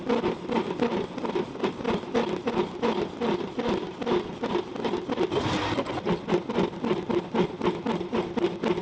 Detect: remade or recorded recorded